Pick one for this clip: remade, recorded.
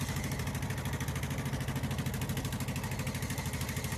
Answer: recorded